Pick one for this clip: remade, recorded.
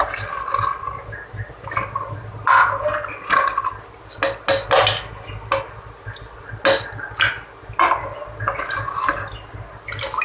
recorded